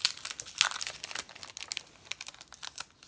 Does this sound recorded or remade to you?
recorded